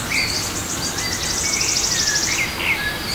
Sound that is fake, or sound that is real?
real